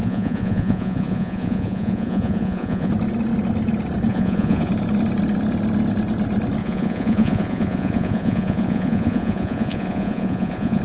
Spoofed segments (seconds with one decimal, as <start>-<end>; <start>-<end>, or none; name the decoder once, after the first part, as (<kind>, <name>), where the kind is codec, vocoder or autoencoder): 0.0-2.9 (vocoder, Vocos); 4.1-4.7; 6.6-10.8